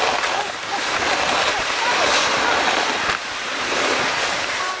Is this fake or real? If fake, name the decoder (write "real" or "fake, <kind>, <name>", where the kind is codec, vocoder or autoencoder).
real